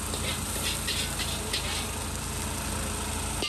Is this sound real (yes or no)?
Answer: yes